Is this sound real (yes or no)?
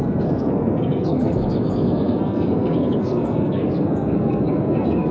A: no